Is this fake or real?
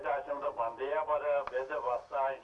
real